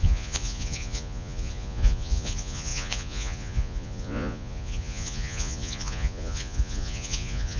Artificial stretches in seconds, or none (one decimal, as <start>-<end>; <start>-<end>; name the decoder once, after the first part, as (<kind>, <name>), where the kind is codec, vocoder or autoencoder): 0.0-7.6 (vocoder, Vocos)